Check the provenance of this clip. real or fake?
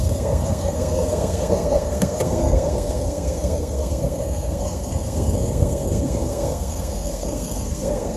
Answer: fake